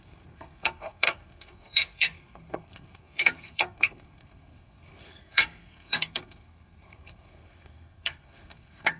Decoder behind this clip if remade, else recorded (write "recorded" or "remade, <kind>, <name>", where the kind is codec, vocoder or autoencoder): remade, codec, SNAC